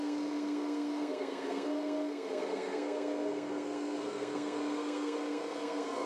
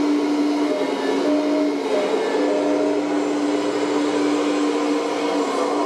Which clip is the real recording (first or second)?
second